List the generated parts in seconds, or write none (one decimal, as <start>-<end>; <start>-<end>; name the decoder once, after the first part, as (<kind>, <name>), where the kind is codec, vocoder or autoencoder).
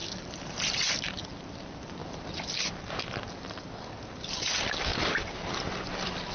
0.0-2.0 (vocoder, BigVGAN v2); 4.0-4.9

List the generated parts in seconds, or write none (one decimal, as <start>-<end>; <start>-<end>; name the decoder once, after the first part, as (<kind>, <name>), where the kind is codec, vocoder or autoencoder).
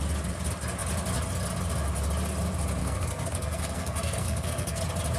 2.8-4.8 (codec, SNAC)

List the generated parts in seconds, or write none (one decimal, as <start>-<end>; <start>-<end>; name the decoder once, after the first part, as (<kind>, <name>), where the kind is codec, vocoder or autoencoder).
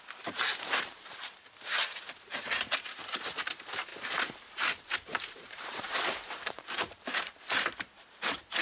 0.0-8.6 (vocoder, BigVGAN v2)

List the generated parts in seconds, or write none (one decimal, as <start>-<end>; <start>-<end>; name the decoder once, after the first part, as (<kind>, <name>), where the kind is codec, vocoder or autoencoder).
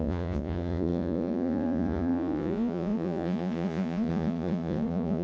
0.0-5.2 (vocoder, Vocos)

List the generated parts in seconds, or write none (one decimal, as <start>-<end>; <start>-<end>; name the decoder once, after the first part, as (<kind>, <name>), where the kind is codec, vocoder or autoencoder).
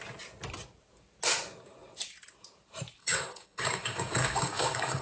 3.0-5.0 (codec, DAC)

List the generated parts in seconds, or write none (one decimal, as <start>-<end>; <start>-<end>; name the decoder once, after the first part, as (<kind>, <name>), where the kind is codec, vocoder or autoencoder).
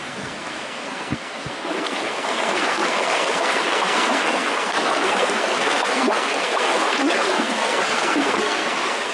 0.0-9.1 (codec, SNAC)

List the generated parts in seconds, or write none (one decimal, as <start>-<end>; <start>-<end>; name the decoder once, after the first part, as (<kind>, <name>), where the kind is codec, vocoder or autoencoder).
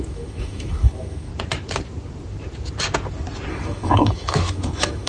0.0-1.3 (autoencoder, DAC-VAE); 3.5-5.1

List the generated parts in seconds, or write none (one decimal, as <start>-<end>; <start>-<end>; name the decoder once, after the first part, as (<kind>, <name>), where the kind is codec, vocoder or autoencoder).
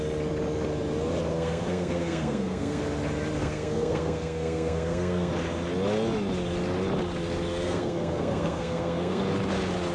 1.3-2.8 (codec, SNAC); 3.4-5.3; 7.5-9.2